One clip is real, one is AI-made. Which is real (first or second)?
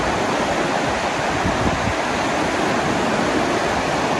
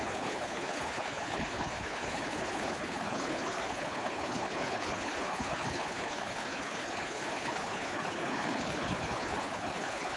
first